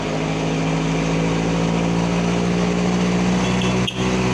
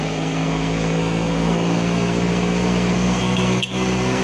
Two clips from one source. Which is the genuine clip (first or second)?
first